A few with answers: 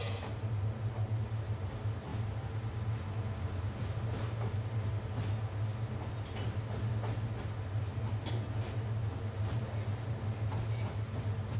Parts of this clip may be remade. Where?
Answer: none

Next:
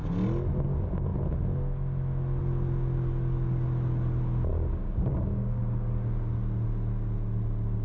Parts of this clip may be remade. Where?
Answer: 4.5-5.6 (codec, DAC)

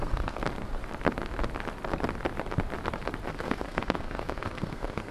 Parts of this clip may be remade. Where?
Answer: 0.0-0.4 (codec, SNAC); 3.3-5.1

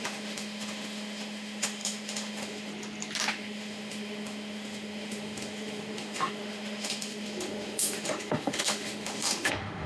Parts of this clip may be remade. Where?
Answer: 0.0-2.7 (autoencoder, DAC-VAE); 3.3-9.9

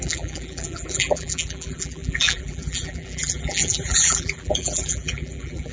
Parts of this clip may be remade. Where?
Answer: 0.0-5.7 (vocoder, BigVGAN v2)

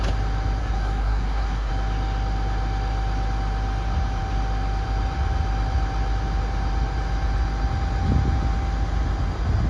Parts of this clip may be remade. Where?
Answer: 0.6-1.7 (codec, SNAC)

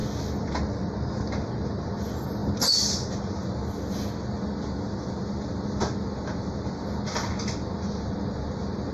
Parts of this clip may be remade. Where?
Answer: none

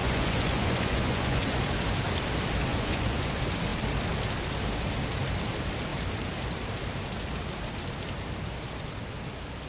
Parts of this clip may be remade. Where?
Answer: 0.0-1.6 (vocoder, Vocos); 2.7-3.3